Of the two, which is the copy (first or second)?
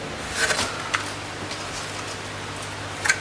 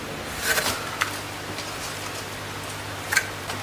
second